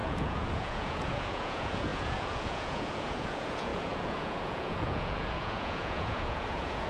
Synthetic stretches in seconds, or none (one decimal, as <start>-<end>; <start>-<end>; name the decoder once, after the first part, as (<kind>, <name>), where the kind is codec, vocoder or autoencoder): 0.0-6.9 (vocoder, Vocos)